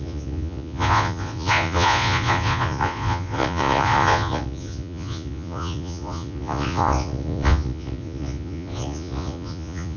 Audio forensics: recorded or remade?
remade